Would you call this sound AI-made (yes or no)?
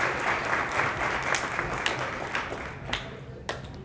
no